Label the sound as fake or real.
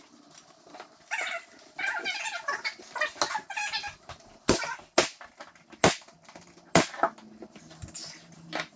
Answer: real